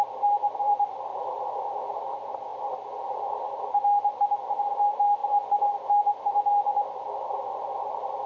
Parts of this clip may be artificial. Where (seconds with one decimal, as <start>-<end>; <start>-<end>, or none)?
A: 1.1-1.6